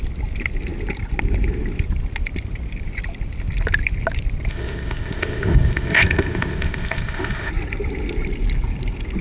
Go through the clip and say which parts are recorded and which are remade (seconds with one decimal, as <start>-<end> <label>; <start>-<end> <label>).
0.0-4.5 recorded; 4.5-7.5 remade; 7.5-9.2 recorded